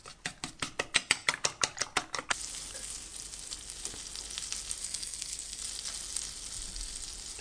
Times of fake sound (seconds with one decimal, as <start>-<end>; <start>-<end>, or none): 4.8-5.6